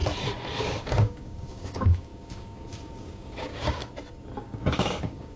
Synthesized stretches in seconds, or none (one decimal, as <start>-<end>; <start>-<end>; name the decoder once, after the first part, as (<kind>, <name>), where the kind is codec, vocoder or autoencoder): 0.6-3.8 (codec, DAC); 4.4-5.4